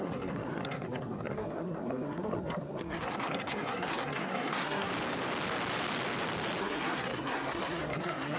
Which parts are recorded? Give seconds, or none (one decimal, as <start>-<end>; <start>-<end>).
4.9-6.6